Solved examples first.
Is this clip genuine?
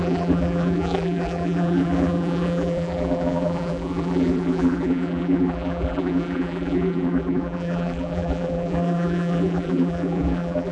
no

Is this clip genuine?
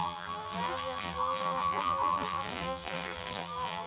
no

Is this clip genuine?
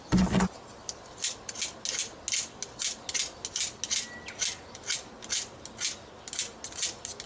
yes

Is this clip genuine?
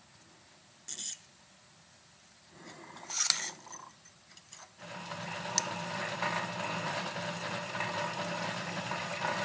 yes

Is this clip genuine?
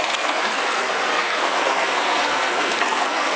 no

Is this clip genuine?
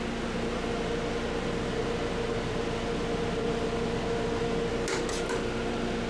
yes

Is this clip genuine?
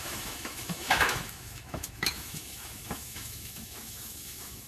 no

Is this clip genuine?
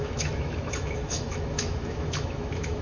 no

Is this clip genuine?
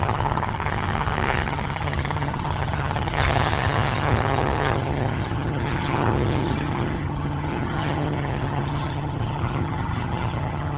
no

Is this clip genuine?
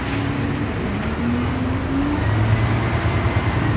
yes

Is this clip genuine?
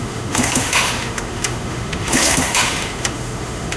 no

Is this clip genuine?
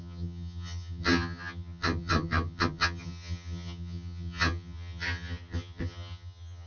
no